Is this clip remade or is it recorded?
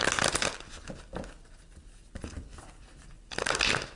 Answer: recorded